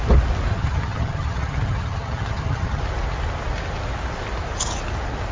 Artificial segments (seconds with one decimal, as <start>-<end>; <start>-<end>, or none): 0.5-2.8